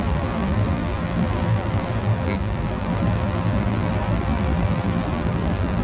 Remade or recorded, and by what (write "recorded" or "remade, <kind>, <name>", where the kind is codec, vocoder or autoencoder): remade, vocoder, BigVGAN v2